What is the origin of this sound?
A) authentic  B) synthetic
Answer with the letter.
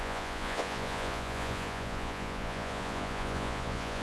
B